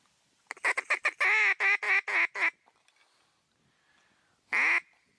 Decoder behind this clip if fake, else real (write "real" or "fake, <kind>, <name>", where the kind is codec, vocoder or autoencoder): real